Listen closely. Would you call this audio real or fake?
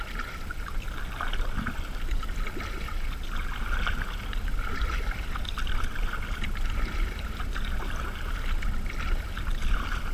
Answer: real